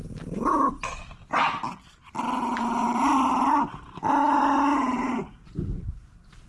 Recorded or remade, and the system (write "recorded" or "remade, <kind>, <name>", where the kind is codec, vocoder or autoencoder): remade, vocoder, BigVGAN v2